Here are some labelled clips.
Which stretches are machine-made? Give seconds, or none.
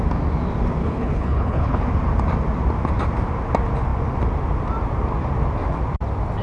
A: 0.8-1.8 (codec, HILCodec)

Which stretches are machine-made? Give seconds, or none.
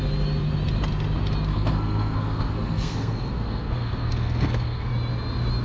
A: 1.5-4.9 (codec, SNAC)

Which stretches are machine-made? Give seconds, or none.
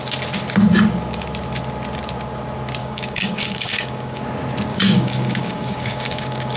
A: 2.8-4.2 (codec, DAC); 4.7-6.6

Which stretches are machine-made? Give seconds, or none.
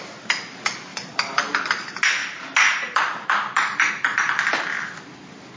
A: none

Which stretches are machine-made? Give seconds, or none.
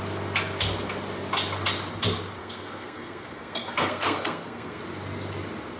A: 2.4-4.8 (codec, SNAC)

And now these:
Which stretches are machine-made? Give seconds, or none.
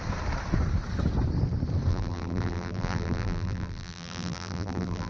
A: 1.9-5.1 (vocoder, BigVGAN v2)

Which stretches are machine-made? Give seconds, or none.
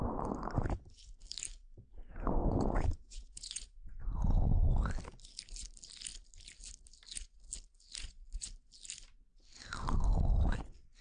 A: 2.4-4.0 (vocoder, Vocos)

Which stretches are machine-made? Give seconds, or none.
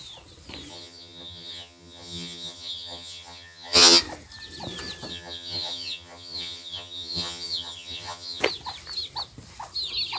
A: 0.7-4.0 (vocoder, HiFi-GAN); 5.1-8.4